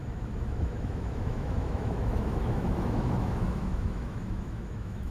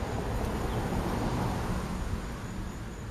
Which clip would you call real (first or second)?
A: second